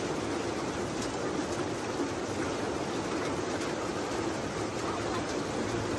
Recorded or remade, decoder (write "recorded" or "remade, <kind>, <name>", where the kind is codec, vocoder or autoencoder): recorded